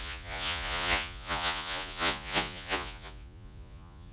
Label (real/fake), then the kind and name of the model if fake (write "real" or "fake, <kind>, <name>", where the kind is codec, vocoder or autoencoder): fake, vocoder, Vocos